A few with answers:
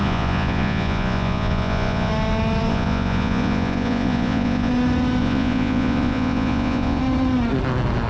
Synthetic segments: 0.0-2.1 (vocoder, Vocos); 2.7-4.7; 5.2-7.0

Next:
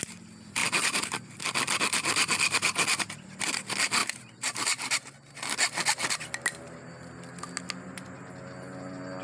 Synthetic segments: 0.6-1.1 (vocoder, BigVGAN v2); 4.0-5.1